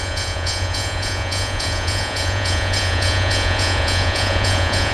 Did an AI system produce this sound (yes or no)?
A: yes